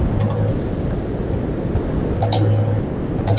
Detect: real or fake real